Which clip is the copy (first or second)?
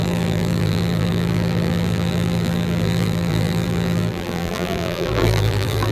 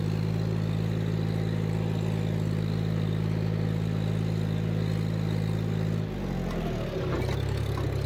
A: first